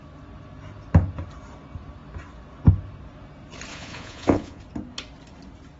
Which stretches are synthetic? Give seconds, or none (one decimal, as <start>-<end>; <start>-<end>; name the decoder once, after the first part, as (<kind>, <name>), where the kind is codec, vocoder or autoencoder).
3.7-4.6 (vocoder, Vocos)